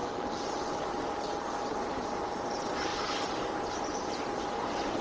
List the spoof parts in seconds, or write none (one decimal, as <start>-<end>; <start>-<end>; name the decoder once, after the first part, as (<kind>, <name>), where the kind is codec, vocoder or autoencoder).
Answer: none